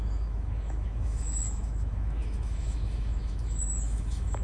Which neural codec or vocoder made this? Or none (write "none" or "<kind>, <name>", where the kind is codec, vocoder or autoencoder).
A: autoencoder, DAC-VAE